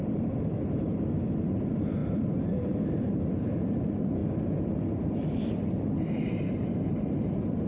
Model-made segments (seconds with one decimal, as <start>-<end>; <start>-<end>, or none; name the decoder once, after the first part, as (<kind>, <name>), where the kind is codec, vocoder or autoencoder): 0.0-4.2 (vocoder, BigVGAN v2); 6.1-7.7